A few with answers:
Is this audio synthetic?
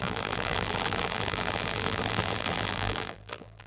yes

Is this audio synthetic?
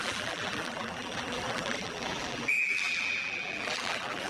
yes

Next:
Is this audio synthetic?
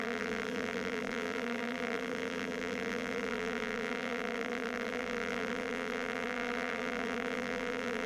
yes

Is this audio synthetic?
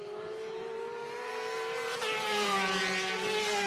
yes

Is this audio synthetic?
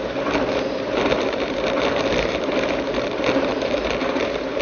yes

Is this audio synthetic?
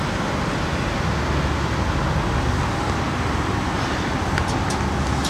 no